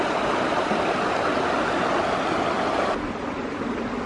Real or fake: real